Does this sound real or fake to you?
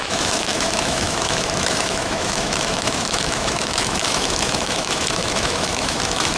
fake